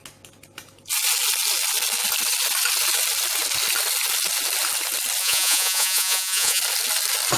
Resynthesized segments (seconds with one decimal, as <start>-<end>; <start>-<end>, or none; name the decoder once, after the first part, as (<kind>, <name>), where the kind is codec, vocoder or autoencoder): 5.2-6.6 (vocoder, Vocos)